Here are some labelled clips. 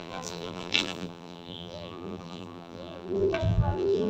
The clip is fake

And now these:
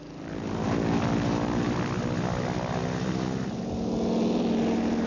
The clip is real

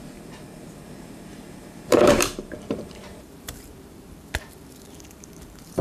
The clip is fake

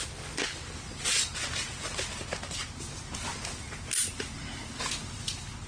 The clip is real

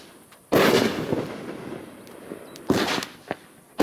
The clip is real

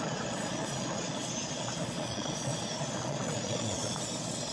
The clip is fake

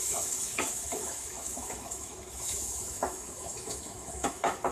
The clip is fake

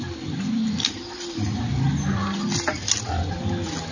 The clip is real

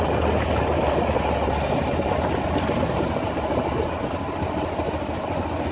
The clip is real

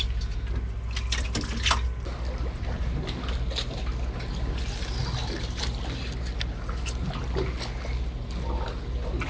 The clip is real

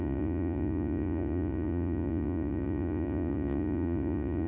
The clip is fake